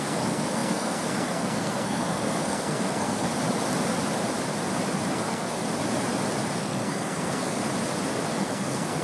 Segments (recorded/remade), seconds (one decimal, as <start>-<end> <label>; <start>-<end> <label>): 0.0-3.3 remade; 3.3-5.1 recorded; 5.1-5.6 remade; 5.6-6.6 recorded; 6.6-7.6 remade; 7.6-8.4 recorded; 8.4-9.0 remade

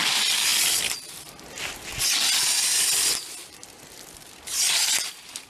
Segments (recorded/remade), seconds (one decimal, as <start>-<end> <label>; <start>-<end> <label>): 0.0-5.5 recorded

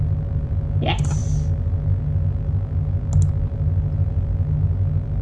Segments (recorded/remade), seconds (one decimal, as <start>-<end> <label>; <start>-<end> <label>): 0.0-5.2 recorded

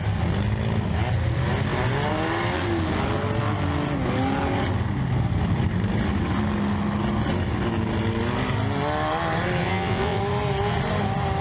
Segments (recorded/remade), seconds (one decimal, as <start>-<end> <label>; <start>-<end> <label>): 0.0-9.6 recorded; 9.6-10.2 remade; 10.2-11.4 recorded

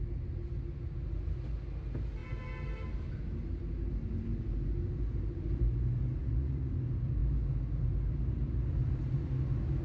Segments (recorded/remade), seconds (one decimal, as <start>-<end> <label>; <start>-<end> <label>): 0.0-6.2 recorded; 6.2-6.7 remade; 6.7-9.8 recorded